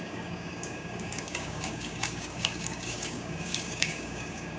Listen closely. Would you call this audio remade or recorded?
remade